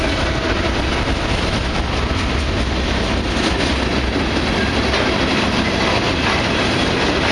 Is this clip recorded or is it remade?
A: recorded